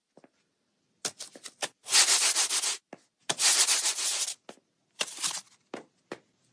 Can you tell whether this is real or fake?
real